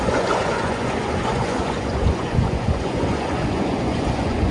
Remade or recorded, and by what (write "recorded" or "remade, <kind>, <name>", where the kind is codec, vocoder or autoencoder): remade, vocoder, Vocos